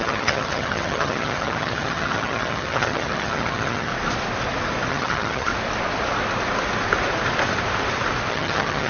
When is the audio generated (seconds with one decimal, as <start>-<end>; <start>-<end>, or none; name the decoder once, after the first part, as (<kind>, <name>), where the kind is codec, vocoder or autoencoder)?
0.0-3.9 (vocoder, HiFi-GAN); 4.9-5.5; 8.3-8.9